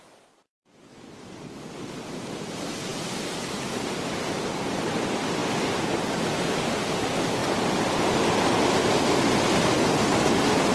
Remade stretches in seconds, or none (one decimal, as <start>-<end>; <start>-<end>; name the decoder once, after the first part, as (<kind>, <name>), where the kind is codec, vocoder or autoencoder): none